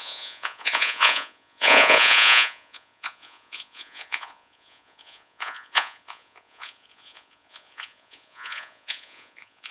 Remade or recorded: remade